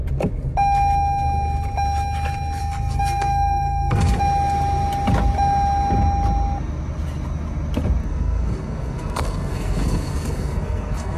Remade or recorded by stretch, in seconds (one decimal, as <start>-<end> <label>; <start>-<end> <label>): 0.0-2.6 recorded; 2.6-4.2 remade; 4.2-8.0 recorded; 8.0-11.2 remade